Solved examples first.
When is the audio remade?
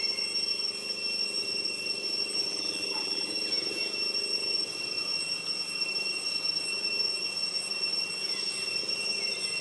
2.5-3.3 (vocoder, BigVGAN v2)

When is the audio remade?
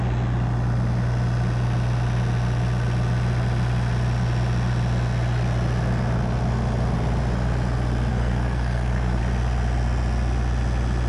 8.1-9.2 (codec, SNAC)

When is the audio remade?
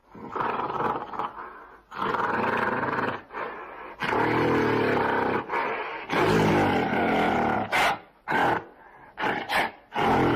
5.9-6.5 (vocoder, BigVGAN v2)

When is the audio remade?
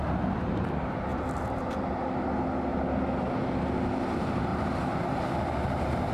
1.1-1.8 (vocoder, BigVGAN v2); 4.5-5.3